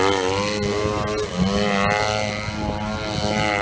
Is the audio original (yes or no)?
yes